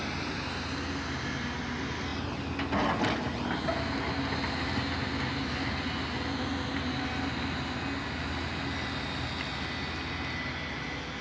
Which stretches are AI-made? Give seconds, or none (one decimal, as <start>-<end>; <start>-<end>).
none